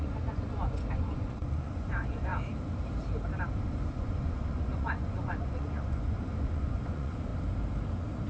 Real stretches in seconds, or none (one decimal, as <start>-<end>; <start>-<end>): 2.3-4.0; 7.3-8.3